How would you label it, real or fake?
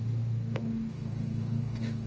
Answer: fake